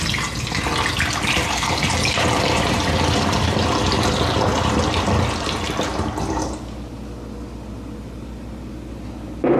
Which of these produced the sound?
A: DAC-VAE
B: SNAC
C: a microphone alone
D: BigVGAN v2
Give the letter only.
C